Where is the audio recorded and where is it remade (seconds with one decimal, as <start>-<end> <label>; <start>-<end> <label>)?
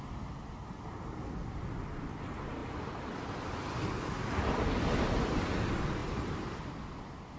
0.0-7.4 recorded